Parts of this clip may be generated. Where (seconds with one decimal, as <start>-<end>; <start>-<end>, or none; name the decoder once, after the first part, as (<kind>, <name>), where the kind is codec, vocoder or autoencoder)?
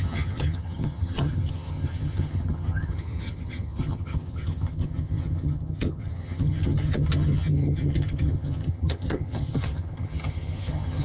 0.0-11.0 (vocoder, HiFi-GAN)